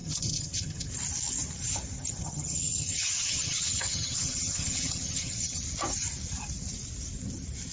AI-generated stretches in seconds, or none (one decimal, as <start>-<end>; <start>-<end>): 0.0-0.9; 2.2-5.6